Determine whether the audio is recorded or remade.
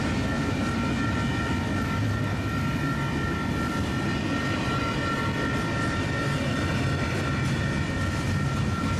recorded